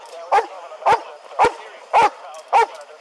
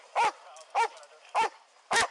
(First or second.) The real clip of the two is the second